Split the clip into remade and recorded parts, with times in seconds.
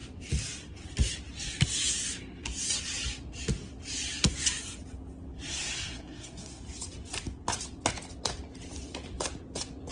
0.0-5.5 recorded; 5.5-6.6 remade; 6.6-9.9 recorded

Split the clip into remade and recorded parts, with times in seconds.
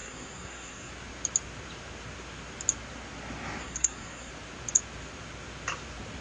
0.0-0.9 remade; 0.9-3.6 recorded; 3.6-4.3 remade; 4.3-6.2 recorded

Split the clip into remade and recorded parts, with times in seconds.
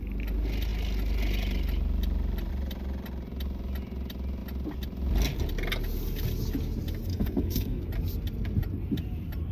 0.0-7.1 recorded; 7.1-7.8 remade; 7.8-9.5 recorded